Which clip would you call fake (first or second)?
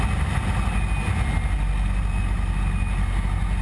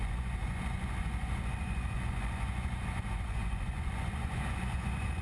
second